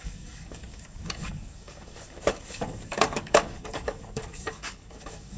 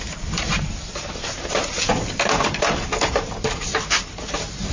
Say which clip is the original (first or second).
second